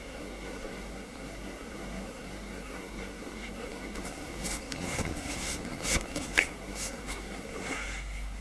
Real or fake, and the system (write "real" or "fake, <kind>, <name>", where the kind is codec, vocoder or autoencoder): fake, codec, SNAC